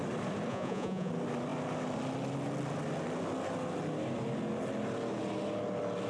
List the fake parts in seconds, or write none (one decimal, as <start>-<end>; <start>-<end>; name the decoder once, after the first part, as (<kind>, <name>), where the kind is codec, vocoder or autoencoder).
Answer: 0.5-1.1 (vocoder, Vocos)